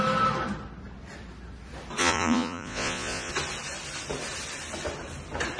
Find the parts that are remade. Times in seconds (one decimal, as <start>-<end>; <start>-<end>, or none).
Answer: 2.0-3.3